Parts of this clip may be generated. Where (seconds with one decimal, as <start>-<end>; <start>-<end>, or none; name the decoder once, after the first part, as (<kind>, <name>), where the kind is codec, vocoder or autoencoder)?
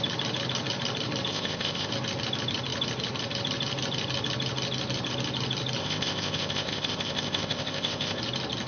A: 1.3-1.9 (codec, ZipCodec); 5.8-8.2